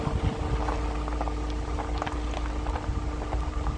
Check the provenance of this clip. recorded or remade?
recorded